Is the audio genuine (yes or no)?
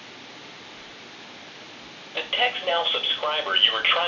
yes